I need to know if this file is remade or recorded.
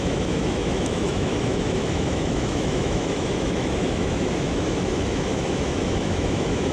remade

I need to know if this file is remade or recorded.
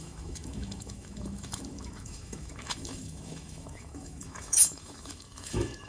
remade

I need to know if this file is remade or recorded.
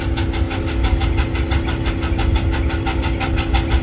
recorded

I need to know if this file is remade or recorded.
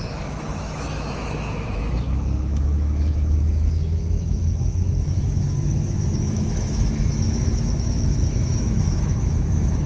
remade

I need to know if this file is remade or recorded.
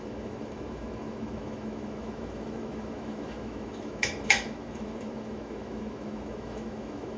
remade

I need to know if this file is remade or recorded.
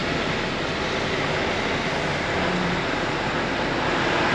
recorded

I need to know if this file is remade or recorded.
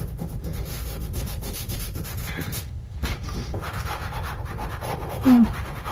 remade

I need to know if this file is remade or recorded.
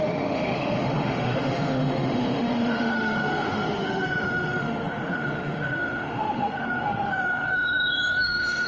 remade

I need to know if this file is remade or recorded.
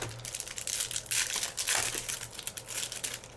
recorded